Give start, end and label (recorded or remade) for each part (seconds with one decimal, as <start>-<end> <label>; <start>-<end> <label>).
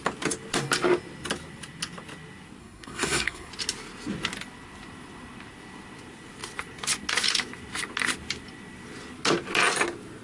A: 0.0-2.6 recorded; 2.6-3.5 remade; 3.5-10.2 recorded